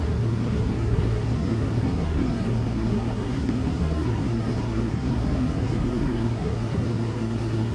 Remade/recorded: remade